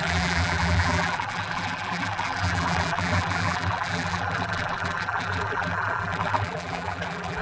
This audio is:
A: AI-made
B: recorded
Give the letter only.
A